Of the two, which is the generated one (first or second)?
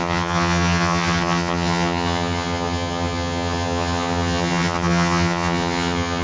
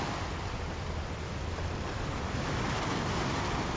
first